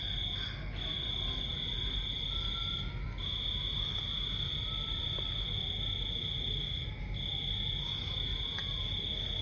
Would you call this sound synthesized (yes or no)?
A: no